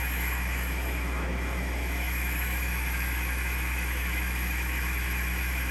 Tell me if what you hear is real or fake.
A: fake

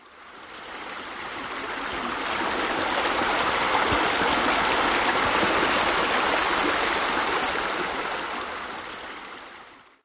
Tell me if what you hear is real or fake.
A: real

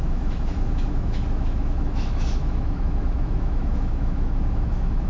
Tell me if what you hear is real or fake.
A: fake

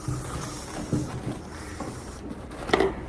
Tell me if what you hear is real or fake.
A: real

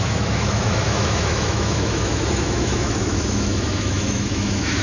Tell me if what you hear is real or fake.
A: fake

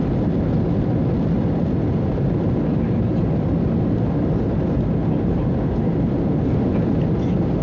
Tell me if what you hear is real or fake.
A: real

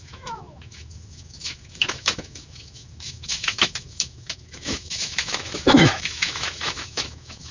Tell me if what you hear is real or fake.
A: fake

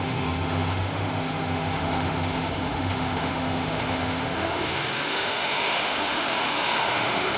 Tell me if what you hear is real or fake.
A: fake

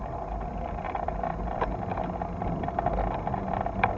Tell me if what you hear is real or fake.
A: real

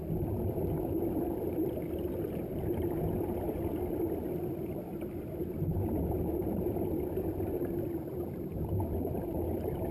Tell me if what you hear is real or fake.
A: real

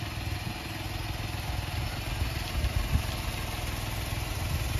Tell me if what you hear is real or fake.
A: real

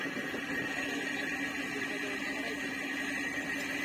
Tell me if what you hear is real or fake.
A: real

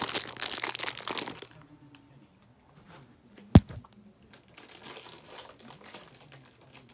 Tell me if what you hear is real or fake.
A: real